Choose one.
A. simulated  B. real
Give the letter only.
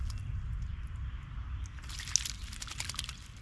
B